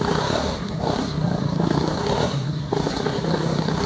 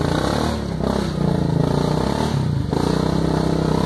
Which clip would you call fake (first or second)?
first